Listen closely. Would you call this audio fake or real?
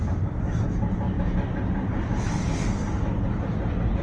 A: real